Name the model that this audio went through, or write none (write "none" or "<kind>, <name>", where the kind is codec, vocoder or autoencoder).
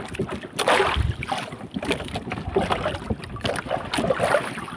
none